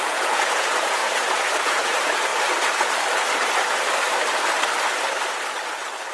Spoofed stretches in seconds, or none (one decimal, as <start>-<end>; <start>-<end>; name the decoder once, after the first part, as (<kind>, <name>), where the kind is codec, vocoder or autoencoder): 0.0-2.3 (vocoder, Vocos)